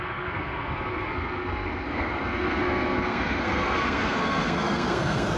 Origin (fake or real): fake